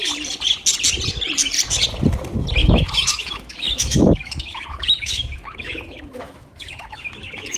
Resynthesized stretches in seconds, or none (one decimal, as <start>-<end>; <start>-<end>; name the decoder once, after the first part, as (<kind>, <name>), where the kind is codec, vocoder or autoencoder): 2.6-7.6 (autoencoder, DAC-VAE)